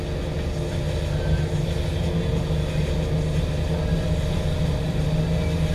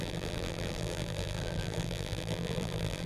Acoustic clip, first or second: first